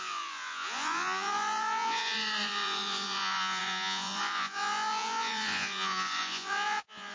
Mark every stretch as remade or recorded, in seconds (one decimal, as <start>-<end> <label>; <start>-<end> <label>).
0.0-7.1 remade